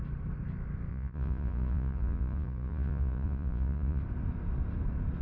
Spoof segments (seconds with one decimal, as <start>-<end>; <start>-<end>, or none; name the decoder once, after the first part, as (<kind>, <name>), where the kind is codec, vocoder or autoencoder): 0.9-4.0 (vocoder, Vocos)